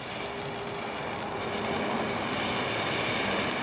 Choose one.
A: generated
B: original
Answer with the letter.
B